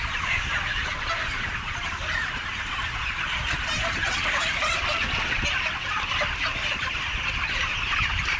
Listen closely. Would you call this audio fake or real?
real